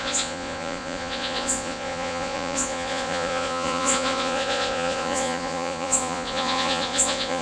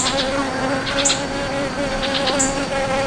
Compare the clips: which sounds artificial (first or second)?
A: first